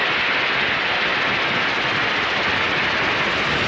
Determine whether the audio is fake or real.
real